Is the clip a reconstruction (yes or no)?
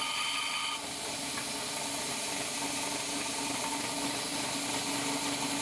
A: no